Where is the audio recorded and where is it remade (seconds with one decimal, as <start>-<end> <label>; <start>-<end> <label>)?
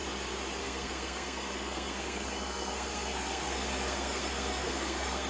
0.0-0.6 recorded; 0.6-5.3 remade